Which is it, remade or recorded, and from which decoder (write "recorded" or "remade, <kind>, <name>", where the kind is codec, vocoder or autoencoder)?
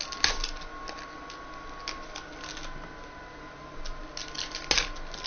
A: recorded